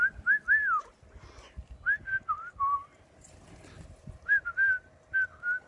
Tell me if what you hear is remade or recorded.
recorded